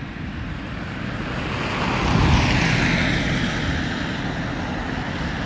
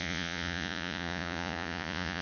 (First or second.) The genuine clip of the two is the first